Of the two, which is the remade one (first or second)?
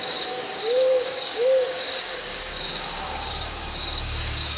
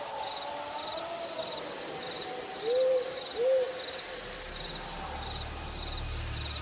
first